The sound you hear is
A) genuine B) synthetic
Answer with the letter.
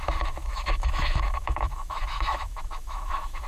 B